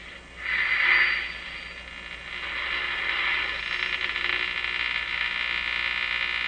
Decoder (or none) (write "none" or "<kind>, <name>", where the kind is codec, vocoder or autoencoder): none